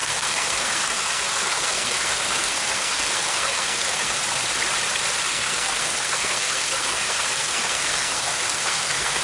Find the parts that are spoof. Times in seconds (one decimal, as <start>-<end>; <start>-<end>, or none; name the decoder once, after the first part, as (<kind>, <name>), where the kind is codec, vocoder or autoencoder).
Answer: 0.0-4.2 (codec, SNAC); 5.3-9.2